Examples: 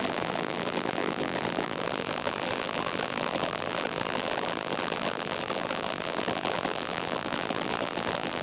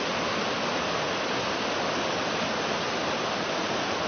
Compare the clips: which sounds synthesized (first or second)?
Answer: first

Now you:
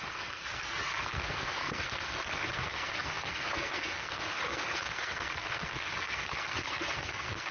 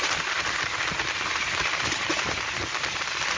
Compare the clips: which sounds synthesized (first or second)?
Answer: first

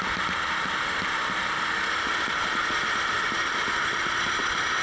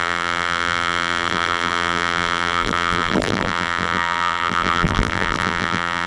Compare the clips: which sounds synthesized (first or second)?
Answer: second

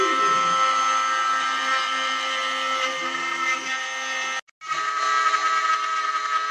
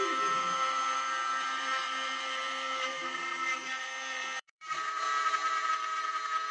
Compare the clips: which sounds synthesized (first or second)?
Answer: second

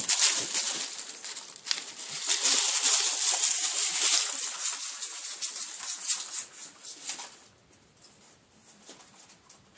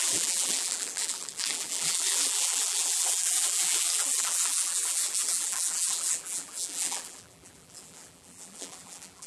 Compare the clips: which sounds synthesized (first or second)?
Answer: second